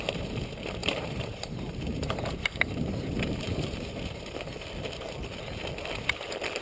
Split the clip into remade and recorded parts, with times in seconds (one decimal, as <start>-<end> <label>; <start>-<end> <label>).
0.0-0.8 recorded; 0.8-4.4 remade; 4.4-6.6 recorded